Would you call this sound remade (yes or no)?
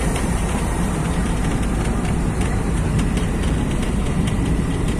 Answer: yes